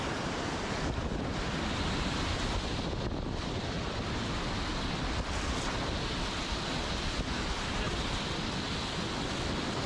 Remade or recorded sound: recorded